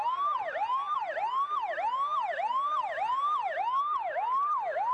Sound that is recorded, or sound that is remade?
recorded